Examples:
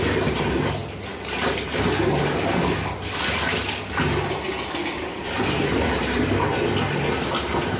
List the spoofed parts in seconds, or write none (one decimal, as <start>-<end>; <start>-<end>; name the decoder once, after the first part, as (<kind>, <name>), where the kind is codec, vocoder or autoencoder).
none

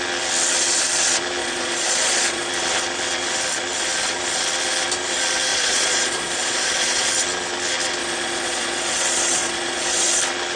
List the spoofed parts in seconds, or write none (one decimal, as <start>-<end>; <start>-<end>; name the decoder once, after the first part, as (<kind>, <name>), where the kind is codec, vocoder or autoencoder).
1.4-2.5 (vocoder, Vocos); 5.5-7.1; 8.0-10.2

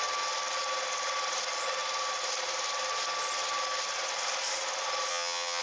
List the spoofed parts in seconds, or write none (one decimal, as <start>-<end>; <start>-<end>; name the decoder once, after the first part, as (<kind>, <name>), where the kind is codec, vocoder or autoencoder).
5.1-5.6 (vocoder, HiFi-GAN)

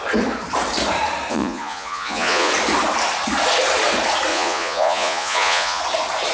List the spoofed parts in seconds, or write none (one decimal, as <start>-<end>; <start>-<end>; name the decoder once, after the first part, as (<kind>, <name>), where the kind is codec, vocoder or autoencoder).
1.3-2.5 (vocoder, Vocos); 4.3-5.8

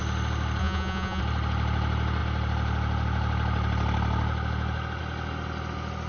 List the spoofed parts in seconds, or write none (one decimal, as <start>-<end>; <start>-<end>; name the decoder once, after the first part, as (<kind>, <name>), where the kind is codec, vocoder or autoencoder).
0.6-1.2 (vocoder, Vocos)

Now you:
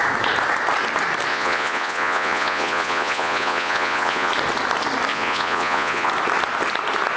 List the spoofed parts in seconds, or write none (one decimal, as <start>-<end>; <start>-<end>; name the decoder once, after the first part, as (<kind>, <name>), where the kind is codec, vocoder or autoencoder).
1.3-4.3 (vocoder, Vocos); 5.1-6.1

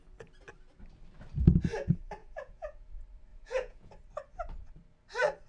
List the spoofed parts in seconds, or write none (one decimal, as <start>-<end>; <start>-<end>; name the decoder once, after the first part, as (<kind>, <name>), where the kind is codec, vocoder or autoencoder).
2.2-2.9 (vocoder, Vocos); 3.3-3.9

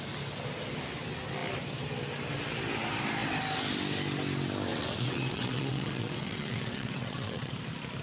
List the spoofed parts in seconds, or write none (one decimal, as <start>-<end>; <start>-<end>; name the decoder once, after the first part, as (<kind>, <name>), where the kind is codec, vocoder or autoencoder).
4.7-7.5 (vocoder, WaveNeXt)